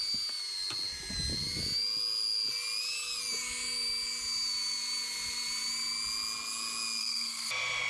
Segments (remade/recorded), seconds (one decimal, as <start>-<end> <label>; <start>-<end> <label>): 0.0-7.0 recorded; 7.0-7.5 remade; 7.5-7.9 recorded

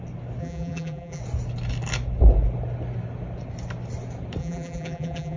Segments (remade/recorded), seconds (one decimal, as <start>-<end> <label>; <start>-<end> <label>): 0.0-0.4 recorded; 0.4-1.2 remade; 1.2-4.4 recorded; 4.4-5.4 remade

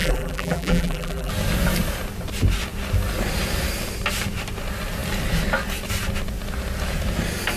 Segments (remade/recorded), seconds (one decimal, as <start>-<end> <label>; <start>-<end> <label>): 0.0-1.3 remade; 1.3-7.6 recorded

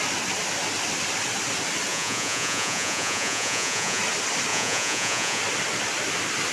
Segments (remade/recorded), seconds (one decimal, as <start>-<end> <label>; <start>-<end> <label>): 0.0-1.9 recorded; 1.9-4.0 remade; 4.0-4.5 recorded; 4.5-5.4 remade; 5.4-6.5 recorded